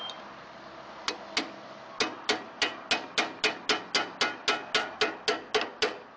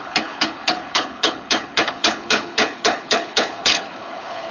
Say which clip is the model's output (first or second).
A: second